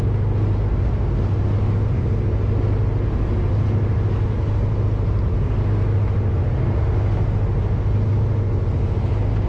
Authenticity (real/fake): real